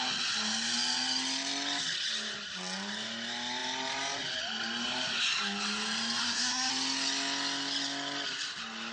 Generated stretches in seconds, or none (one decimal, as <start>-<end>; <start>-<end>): 6.2-6.7